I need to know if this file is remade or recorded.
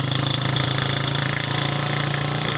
remade